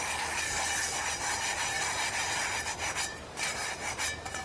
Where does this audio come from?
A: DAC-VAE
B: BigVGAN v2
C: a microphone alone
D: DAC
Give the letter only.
C